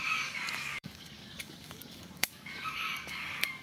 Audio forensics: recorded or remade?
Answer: remade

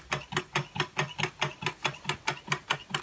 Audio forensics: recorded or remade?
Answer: recorded